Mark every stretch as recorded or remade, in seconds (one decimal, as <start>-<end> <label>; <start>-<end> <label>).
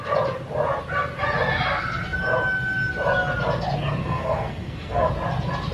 0.0-4.0 recorded; 4.0-5.1 remade; 5.1-5.7 recorded